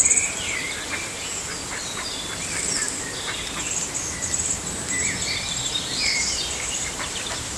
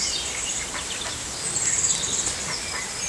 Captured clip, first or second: second